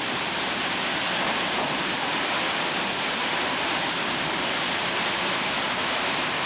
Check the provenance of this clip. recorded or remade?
remade